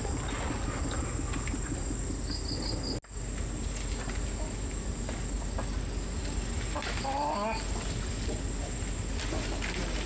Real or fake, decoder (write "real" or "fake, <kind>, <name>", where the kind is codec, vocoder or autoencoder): real